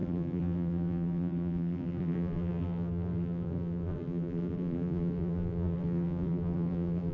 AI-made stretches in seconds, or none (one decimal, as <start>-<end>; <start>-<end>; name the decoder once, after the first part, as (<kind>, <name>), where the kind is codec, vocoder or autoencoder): 0.0-7.1 (vocoder, BigVGAN v2)